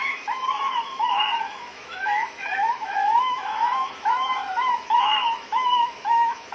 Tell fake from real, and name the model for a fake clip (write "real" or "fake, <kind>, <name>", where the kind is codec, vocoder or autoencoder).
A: fake, autoencoder, DAC-VAE